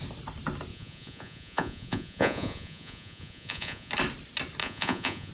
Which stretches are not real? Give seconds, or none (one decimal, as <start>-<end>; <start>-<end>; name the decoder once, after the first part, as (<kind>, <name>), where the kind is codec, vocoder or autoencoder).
0.7-3.9 (vocoder, Vocos); 4.6-5.3

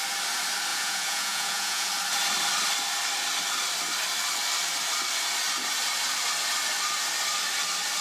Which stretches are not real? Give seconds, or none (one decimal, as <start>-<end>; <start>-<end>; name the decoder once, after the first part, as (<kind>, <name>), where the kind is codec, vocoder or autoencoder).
0.7-1.9 (vocoder, Vocos)

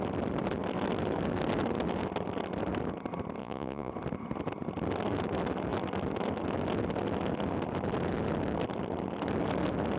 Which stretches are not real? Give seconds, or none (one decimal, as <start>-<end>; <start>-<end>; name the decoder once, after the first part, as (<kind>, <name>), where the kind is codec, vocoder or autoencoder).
3.4-3.9 (vocoder, Vocos)

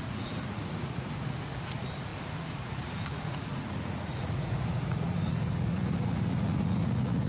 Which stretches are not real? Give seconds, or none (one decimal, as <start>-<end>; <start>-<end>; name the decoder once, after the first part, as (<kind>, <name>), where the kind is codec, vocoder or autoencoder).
0.0-7.3 (vocoder, Vocos)

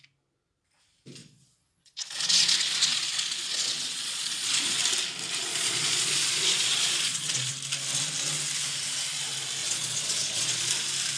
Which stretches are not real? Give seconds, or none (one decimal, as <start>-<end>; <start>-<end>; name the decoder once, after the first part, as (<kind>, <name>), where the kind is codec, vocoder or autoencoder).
1.2-4.8 (vocoder, Vocos); 5.5-7.5; 9.6-10.7

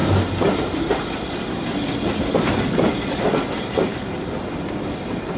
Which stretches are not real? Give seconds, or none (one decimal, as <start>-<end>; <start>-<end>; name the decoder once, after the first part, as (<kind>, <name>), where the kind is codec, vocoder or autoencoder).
none

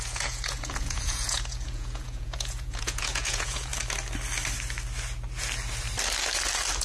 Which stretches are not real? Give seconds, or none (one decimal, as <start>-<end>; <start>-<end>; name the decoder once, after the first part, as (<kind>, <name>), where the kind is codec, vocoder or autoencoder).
0.0-3.7 (vocoder, Vocos)